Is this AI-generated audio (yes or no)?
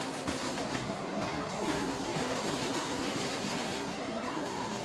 yes